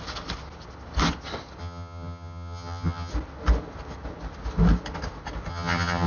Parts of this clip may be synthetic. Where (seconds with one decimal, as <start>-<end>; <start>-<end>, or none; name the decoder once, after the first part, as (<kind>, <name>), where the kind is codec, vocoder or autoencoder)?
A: 1.6-3.1 (vocoder, HiFi-GAN); 5.5-6.1